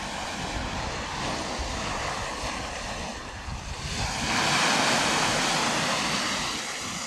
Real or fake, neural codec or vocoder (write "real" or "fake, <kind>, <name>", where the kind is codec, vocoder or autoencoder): real